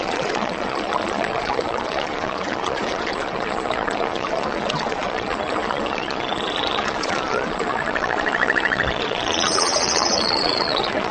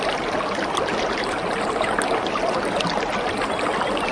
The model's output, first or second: first